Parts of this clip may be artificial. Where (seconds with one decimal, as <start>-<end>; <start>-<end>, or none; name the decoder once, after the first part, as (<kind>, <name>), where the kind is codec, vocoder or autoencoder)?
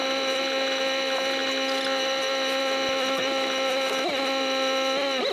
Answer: none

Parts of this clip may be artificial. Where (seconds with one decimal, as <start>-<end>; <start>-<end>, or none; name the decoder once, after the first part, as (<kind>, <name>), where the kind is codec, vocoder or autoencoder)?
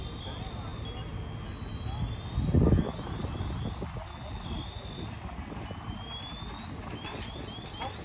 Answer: none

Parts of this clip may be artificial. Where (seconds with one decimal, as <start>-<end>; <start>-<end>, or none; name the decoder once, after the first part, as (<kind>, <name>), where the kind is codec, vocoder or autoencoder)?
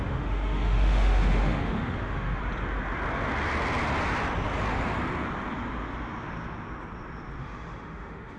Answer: 0.0-2.4 (autoencoder, DAC-VAE); 7.4-8.4